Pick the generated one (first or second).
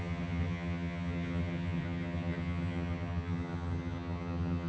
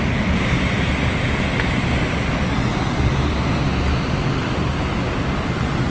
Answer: first